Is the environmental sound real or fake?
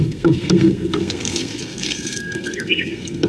fake